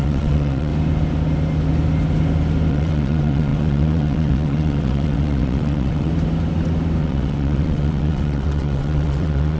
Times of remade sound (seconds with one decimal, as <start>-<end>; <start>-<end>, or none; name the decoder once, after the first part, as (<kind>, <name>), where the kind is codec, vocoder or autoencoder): 0.0-0.7 (vocoder, WaveNeXt); 2.7-6.1; 7.0-9.6